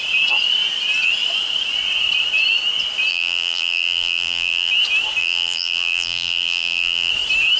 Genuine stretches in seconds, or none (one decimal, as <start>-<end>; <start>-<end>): 0.0-3.1; 4.7-5.2; 7.1-7.6